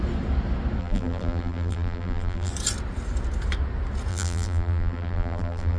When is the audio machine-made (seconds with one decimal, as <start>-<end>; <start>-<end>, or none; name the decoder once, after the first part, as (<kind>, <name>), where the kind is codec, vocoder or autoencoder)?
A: 0.8-2.5 (vocoder, BigVGAN v2); 4.1-5.8